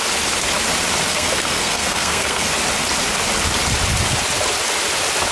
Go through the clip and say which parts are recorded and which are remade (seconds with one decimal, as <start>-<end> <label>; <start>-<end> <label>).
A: 0.0-1.1 recorded; 1.1-2.5 remade; 2.5-5.3 recorded